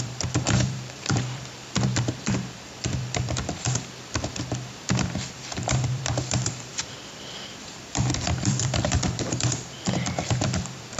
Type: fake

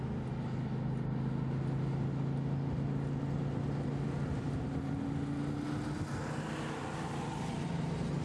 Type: real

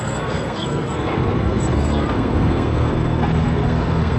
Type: fake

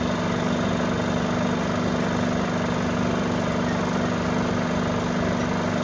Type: real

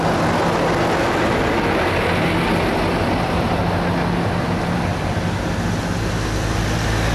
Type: real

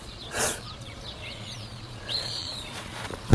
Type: fake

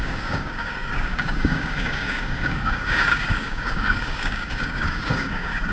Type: fake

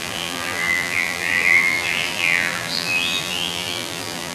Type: fake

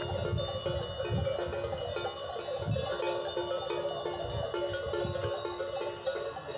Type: real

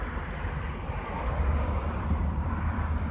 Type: fake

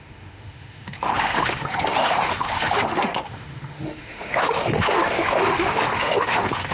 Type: fake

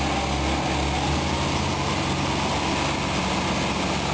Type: real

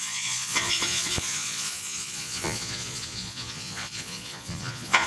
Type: fake